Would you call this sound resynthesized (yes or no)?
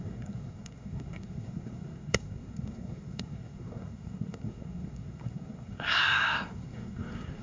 yes